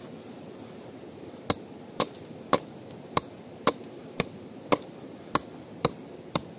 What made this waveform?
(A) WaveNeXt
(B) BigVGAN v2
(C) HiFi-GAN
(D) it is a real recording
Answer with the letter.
D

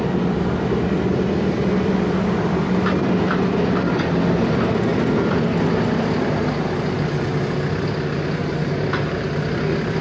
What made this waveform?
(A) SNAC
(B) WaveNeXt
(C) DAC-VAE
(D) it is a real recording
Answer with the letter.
D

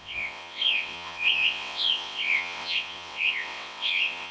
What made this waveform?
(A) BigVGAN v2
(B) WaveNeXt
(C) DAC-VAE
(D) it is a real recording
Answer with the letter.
B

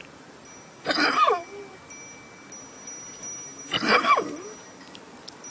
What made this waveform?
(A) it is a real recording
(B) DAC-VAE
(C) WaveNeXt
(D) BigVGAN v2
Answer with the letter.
A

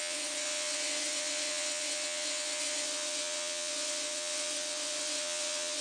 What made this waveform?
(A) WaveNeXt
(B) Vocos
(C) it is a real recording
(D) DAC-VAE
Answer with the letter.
A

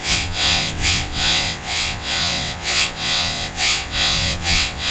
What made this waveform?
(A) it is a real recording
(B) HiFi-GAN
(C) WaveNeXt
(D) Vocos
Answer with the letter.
C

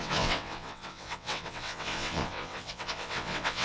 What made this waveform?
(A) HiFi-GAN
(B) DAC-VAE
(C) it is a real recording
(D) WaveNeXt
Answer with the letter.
D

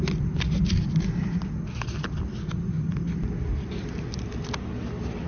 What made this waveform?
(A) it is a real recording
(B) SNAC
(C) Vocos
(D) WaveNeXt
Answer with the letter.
A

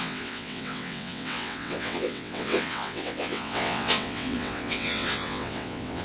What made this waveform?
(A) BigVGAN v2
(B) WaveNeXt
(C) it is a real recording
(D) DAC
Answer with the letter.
B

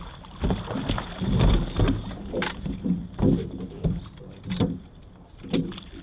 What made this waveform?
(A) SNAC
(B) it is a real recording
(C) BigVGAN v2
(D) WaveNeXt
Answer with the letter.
B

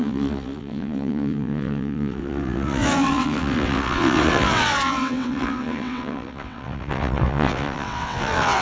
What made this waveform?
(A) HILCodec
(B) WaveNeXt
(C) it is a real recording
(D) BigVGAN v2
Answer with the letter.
B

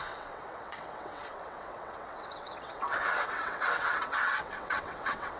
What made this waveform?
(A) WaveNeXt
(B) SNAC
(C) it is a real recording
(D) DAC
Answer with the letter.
A